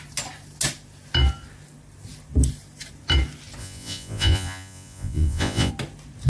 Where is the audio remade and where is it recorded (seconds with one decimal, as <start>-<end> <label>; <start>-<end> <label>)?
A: 0.0-3.6 recorded; 3.6-5.7 remade; 5.7-6.3 recorded